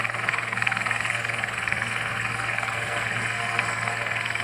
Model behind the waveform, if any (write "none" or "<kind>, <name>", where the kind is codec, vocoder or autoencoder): codec, SNAC